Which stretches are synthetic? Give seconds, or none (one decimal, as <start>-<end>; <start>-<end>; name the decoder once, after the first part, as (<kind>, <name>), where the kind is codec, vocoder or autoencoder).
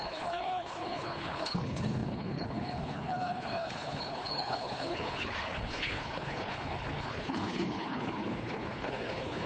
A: 0.0-9.5 (codec, HILCodec)